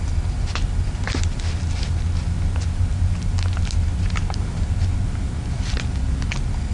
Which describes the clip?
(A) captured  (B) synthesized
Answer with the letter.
A